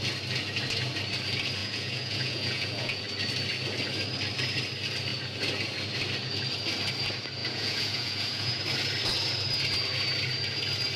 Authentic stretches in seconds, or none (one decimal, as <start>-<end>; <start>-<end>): 0.0-1.6; 3.0-7.4; 8.6-11.0